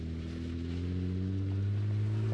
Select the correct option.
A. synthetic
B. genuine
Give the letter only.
B